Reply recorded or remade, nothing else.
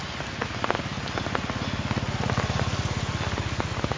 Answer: recorded